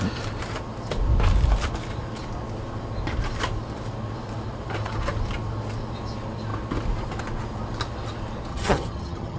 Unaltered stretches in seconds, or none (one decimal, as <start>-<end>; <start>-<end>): 0.0-8.5